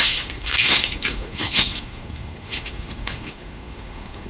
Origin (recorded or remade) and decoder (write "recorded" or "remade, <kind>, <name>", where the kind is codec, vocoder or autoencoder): remade, codec, SNAC